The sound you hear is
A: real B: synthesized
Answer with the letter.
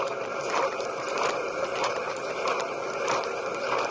B